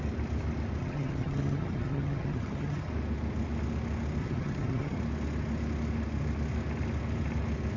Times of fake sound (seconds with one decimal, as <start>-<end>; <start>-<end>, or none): 0.8-2.9; 4.2-5.0